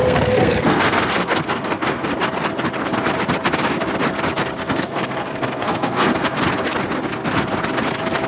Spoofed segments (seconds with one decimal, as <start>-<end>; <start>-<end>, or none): 0.0-2.1; 4.6-6.4